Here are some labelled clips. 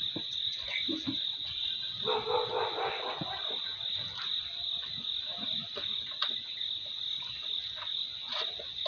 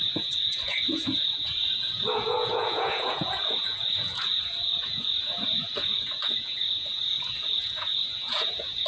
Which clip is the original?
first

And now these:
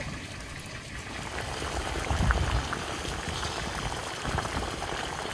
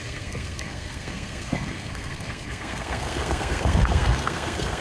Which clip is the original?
first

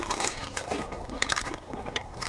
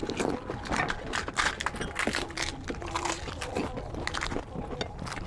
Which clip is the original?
second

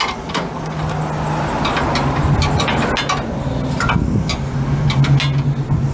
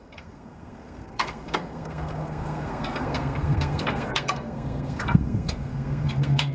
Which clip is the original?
first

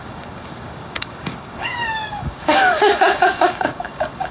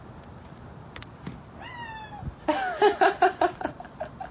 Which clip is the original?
second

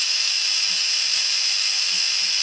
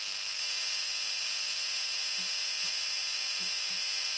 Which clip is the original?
second